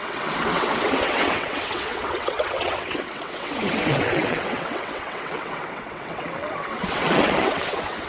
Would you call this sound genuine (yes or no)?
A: no